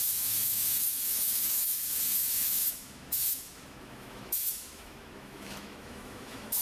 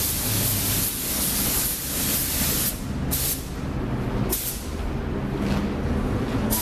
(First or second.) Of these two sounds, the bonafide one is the second